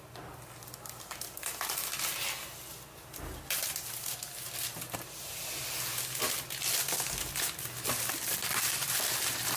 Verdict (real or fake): real